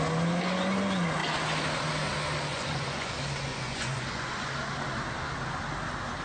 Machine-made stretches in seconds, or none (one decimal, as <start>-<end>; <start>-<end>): 2.5-3.1; 3.5-4.5